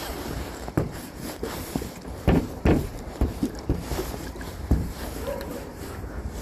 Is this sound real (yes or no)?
no